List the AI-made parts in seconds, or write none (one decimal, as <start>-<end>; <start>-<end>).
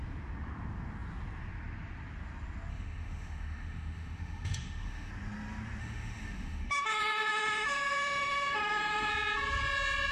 2.7-5.1; 5.8-9.1